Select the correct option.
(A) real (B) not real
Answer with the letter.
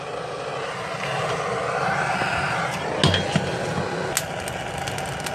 A